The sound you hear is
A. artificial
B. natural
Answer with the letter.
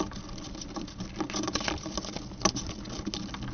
B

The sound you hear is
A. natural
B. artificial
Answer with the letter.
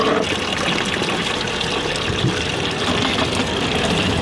A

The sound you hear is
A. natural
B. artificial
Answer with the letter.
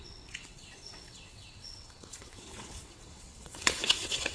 B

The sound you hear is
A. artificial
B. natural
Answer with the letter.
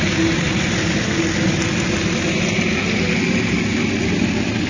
B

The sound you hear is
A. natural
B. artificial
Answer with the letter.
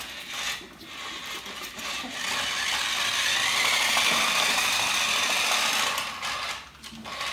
A